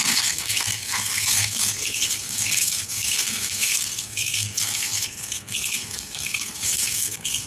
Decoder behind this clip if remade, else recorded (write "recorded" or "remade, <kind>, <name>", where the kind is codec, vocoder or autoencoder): remade, codec, SNAC